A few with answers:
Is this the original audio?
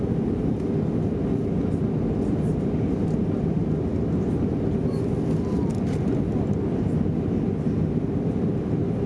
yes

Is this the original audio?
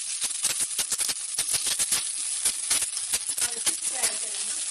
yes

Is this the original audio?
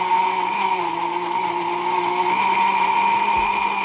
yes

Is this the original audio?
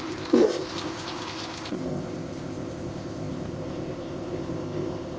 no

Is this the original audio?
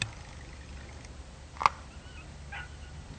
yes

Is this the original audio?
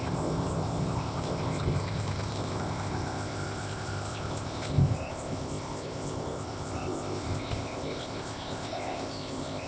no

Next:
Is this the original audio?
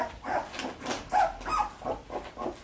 yes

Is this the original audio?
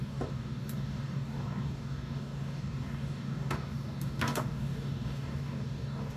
no